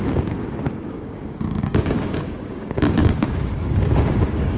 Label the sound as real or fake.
fake